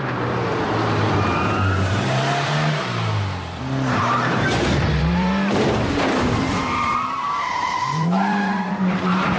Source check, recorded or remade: remade